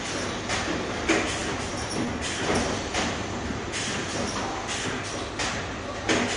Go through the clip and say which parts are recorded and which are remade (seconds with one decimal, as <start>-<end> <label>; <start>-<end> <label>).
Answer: 0.0-6.4 recorded